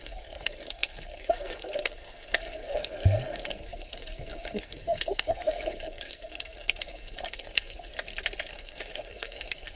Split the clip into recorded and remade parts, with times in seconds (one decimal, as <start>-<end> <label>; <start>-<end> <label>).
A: 0.0-7.9 remade; 7.9-8.5 recorded; 8.5-9.8 remade